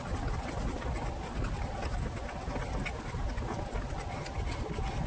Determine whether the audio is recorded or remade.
recorded